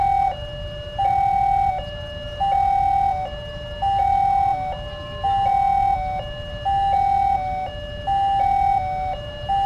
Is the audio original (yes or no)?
yes